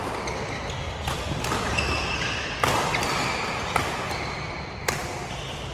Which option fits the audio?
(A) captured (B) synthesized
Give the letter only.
A